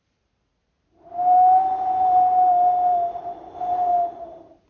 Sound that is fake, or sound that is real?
real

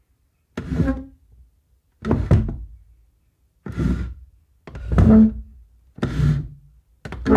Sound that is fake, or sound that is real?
real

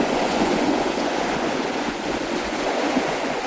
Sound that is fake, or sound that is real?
fake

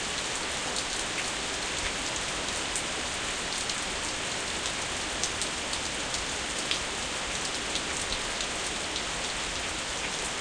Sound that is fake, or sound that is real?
real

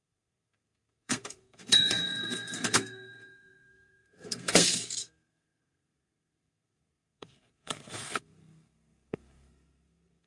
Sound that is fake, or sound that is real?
fake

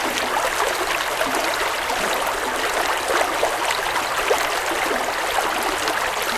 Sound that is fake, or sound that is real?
real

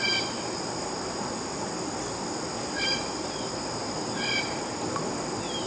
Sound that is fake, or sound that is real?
real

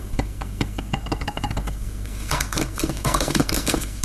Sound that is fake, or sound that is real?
fake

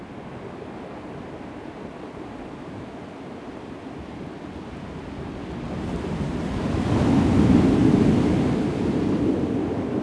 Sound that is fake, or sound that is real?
real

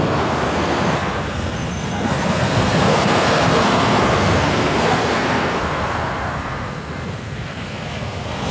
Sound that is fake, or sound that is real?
fake